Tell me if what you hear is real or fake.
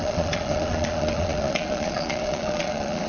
fake